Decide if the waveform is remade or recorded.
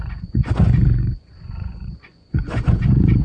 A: remade